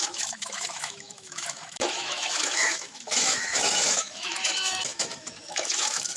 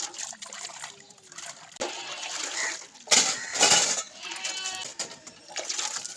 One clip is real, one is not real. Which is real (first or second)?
second